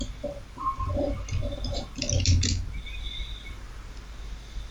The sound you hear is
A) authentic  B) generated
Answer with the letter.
A